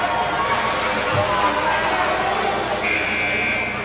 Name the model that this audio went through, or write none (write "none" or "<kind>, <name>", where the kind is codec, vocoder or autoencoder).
none